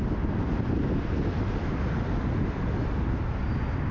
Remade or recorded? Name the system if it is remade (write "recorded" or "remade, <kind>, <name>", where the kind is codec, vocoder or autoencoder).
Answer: recorded